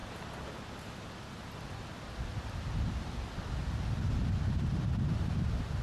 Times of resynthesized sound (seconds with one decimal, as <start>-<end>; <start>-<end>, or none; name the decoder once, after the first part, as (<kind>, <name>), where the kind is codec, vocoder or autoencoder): none